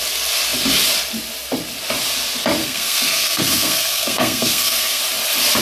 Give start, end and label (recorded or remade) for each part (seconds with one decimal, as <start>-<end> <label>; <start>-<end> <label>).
0.0-2.6 recorded; 2.6-5.0 remade; 5.0-5.6 recorded